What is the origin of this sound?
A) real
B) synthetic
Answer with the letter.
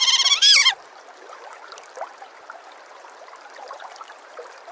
B